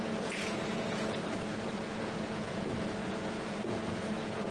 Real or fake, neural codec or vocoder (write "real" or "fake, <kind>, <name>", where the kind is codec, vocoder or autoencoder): fake, vocoder, Vocos